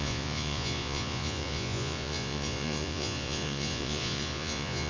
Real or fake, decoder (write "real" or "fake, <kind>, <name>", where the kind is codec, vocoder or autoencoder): fake, vocoder, Vocos